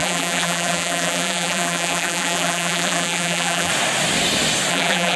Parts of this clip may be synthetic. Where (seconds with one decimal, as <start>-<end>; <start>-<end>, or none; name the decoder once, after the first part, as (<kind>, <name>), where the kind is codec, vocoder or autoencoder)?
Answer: 0.0-3.7 (vocoder, BigVGAN v2); 4.7-5.2